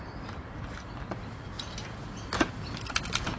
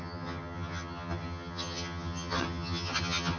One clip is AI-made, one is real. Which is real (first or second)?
first